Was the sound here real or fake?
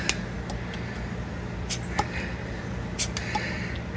real